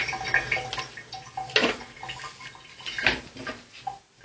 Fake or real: real